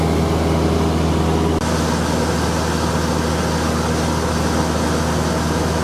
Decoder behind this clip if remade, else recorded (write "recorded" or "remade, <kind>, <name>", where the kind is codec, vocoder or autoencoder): recorded